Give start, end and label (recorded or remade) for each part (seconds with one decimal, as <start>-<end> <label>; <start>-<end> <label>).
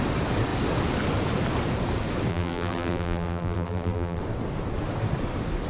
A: 0.0-2.3 recorded; 2.3-4.2 remade; 4.2-5.7 recorded